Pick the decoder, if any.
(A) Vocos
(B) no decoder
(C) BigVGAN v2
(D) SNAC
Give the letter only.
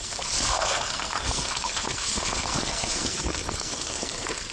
D